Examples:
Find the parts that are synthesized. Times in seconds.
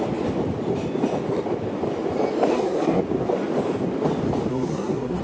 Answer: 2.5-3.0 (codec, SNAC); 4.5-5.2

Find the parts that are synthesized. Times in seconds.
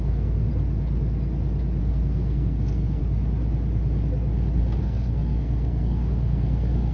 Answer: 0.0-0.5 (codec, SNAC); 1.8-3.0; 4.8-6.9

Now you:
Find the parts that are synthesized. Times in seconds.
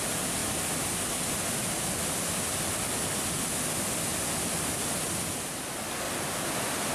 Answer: none